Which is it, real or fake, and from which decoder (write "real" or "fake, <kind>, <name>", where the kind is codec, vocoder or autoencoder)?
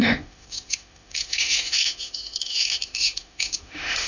fake, autoencoder, DAC-VAE